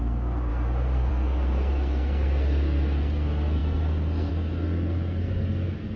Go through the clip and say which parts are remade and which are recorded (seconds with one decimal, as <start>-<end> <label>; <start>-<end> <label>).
0.0-6.0 remade